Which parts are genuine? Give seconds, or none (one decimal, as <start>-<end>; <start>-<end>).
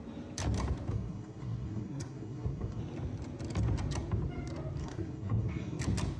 0.0-0.9; 2.8-4.8; 5.8-6.2